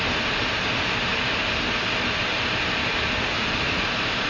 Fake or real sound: fake